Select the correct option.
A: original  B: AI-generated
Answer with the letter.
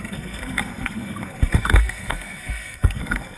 B